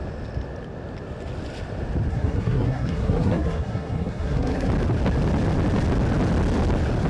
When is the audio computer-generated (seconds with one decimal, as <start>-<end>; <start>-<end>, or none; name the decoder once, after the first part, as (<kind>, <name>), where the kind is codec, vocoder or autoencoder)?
2.1-4.7 (codec, SNAC)